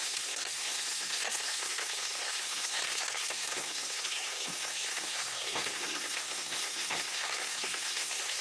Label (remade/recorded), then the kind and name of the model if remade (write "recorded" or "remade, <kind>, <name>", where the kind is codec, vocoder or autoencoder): remade, codec, SNAC